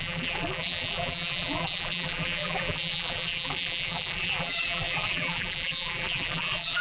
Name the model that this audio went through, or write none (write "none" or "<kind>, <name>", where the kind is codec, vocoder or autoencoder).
vocoder, BigVGAN v2